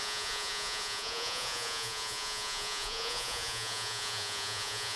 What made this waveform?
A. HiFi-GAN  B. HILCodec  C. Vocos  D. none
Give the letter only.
C